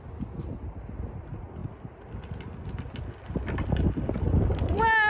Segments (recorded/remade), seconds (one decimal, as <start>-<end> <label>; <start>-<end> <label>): 0.0-5.1 recorded